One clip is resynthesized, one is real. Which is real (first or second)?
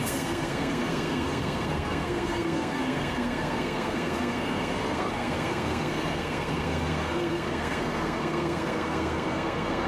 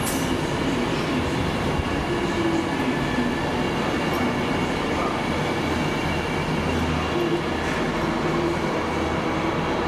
second